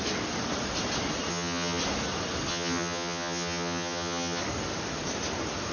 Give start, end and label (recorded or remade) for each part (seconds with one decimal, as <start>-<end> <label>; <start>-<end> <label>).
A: 0.0-1.3 recorded; 1.3-1.8 remade; 1.8-2.5 recorded; 2.5-4.4 remade; 4.4-5.7 recorded